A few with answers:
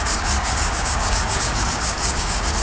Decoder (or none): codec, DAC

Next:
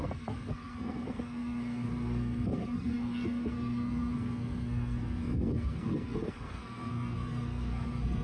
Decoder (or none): codec, SNAC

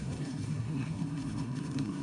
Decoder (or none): codec, SNAC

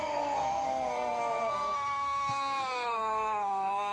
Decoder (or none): codec, SNAC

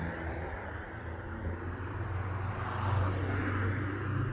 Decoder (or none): none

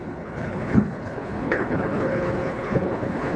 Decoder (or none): codec, HILCodec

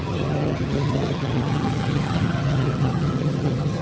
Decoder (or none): vocoder, HiFi-GAN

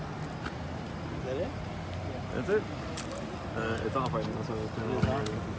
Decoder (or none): none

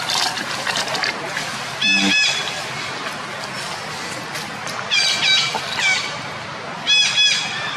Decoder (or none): none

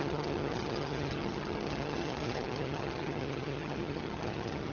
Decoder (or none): vocoder, HiFi-GAN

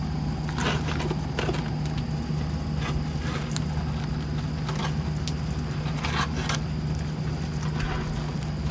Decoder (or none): none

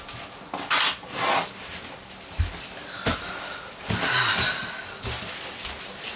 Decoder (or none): none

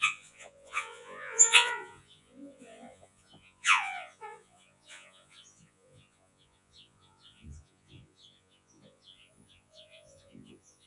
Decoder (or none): vocoder, Vocos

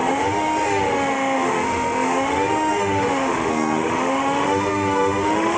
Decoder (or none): autoencoder, DAC-VAE